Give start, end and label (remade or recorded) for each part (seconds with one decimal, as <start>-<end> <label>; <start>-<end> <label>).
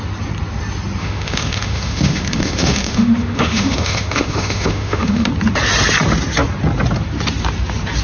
0.0-1.0 recorded; 1.0-5.3 remade; 5.3-8.0 recorded